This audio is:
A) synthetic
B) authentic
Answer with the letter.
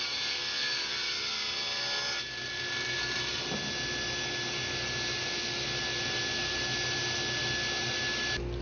B